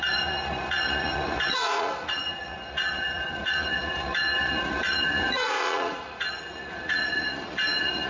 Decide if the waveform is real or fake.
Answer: fake